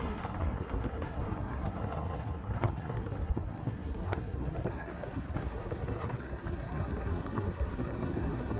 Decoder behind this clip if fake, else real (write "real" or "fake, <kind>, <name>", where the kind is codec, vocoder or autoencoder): fake, codec, SNAC